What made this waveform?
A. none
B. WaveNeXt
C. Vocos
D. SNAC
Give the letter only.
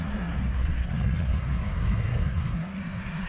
D